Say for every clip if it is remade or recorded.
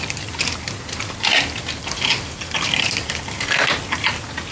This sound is recorded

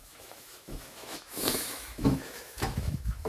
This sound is remade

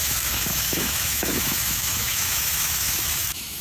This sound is remade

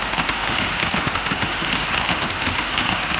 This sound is remade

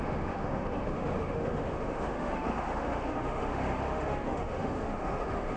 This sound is remade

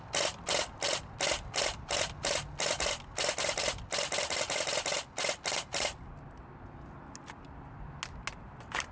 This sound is recorded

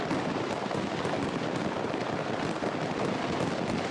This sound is recorded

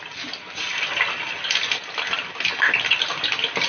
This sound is recorded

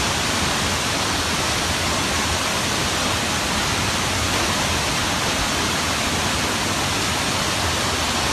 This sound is recorded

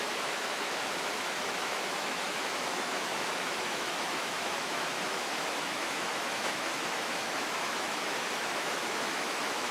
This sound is remade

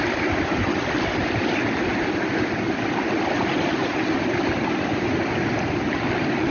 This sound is recorded